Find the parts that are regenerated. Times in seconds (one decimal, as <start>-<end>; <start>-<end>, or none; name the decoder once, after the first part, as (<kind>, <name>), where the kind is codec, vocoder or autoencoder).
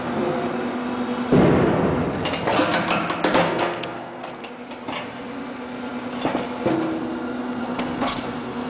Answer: 3.4-4.5 (codec, SNAC); 7.6-8.7